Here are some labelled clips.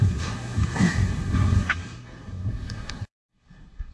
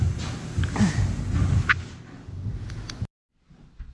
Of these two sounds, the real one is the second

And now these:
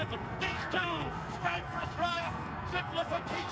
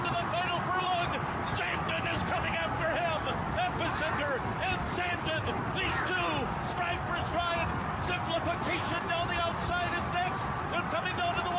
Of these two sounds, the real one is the second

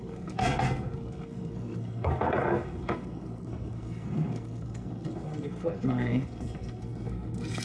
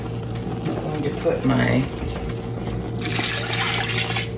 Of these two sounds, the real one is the second